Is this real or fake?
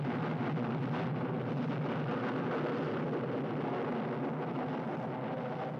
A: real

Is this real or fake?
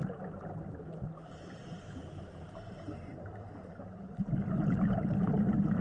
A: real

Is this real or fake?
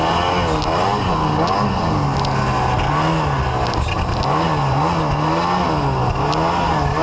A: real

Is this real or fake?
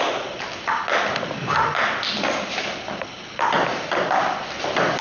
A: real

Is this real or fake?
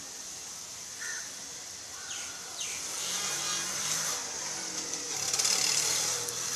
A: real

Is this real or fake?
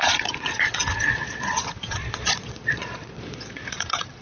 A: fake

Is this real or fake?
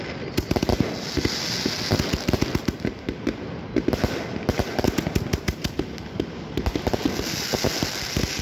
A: real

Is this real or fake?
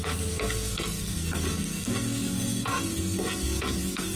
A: fake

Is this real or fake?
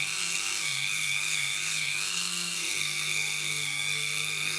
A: fake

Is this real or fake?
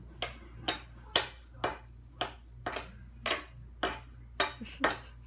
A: real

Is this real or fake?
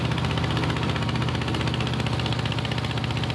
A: real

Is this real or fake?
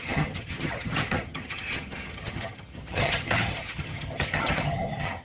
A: fake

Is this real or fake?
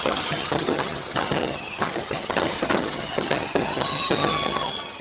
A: fake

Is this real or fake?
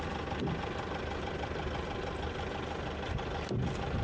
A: real